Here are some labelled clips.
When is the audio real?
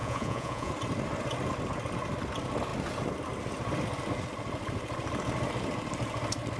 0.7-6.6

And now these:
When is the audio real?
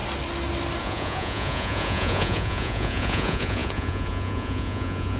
0.0-0.8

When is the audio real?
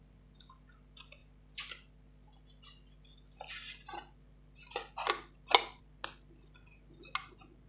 0.0-7.7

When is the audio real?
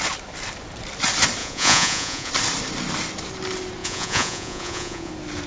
0.0-1.4; 2.3-3.8; 5.1-5.5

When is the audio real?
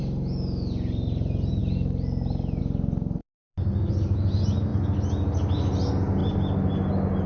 0.0-7.3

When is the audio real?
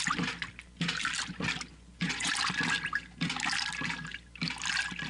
0.0-1.7; 2.3-5.1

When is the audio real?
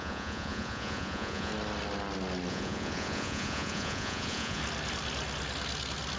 1.5-2.5; 4.6-6.2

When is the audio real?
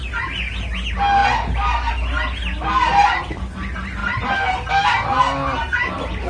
0.0-6.3